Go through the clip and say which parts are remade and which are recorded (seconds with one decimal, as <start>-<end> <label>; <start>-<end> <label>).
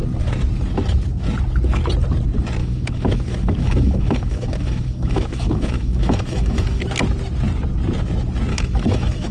0.0-2.6 recorded; 2.6-6.8 remade; 6.8-8.5 recorded; 8.5-9.3 remade